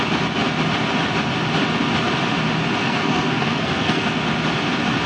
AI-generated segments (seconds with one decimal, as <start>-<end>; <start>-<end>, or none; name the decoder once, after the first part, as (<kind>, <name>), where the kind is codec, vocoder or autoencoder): 2.8-4.2 (codec, SNAC)